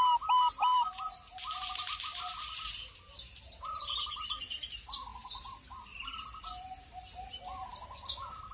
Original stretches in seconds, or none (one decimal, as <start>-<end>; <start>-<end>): 0.0-0.7; 4.3-5.1; 5.9-8.5